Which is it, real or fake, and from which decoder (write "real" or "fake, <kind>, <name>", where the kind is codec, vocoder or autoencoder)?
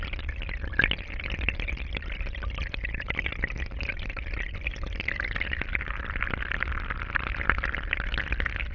real